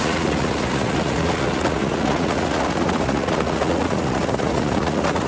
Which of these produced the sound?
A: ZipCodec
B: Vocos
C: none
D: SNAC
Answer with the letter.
B